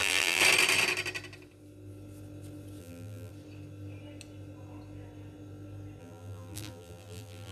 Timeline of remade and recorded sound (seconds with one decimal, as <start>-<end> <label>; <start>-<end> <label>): 0.0-0.4 remade; 0.4-2.8 recorded; 2.8-3.3 remade; 3.3-6.0 recorded; 6.0-7.5 remade